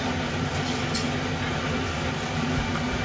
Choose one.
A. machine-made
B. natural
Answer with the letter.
B